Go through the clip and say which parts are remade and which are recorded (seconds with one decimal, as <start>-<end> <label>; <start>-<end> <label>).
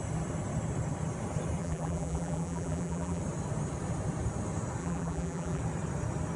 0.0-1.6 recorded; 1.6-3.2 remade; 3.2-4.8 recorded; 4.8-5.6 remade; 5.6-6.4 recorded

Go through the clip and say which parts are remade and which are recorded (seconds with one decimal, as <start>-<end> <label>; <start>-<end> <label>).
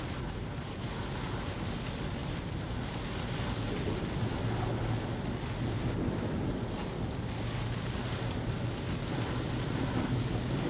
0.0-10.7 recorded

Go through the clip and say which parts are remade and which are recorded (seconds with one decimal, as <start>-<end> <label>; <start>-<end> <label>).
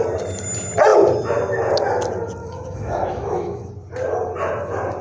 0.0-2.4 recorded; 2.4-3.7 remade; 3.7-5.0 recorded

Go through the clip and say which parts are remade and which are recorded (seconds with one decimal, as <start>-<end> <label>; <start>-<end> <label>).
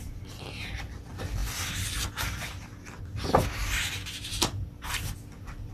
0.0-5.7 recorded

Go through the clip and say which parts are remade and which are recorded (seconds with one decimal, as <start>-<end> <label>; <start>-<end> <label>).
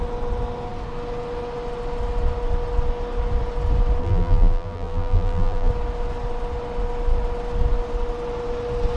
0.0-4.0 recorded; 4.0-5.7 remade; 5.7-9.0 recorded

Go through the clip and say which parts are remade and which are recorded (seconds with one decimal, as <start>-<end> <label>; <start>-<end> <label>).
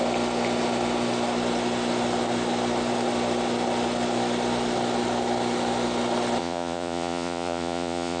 0.0-6.4 recorded; 6.4-8.2 remade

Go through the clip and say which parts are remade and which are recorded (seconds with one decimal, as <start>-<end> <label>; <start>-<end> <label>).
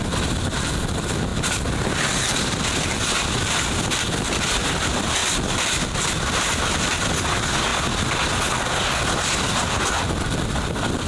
0.0-5.2 remade; 5.2-6.0 recorded; 6.0-7.7 remade; 7.7-10.0 recorded; 10.0-11.1 remade